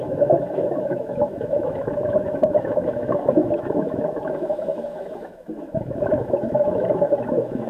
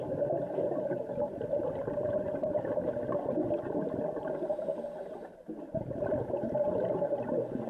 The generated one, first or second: first